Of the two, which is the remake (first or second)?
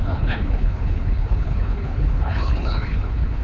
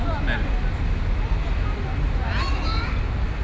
first